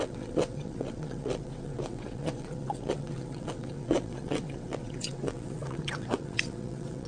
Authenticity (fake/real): fake